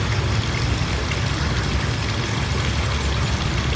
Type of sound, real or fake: real